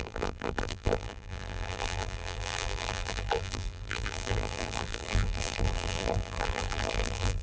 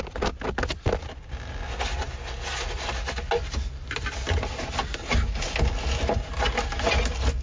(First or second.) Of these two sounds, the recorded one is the second